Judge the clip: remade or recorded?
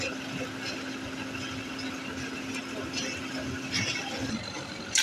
recorded